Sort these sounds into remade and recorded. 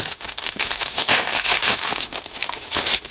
remade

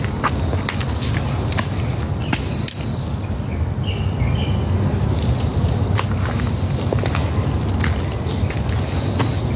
recorded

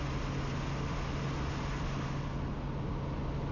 recorded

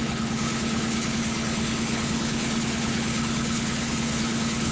remade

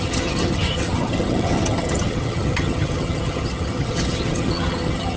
remade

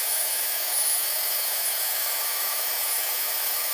remade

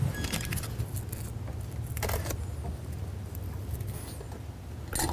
recorded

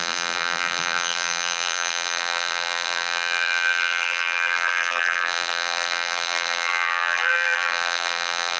remade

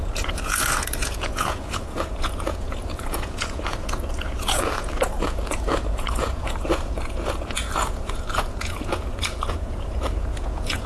remade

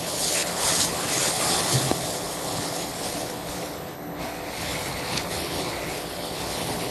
remade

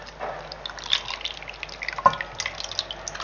recorded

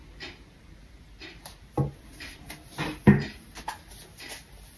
recorded